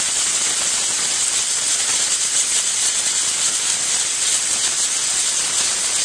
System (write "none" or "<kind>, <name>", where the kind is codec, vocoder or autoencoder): none